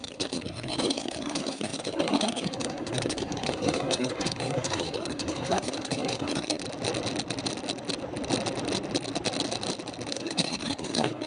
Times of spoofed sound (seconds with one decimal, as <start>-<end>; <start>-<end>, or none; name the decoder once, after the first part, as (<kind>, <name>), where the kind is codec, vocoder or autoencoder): 0.0-6.6 (codec, SNAC); 10.1-11.3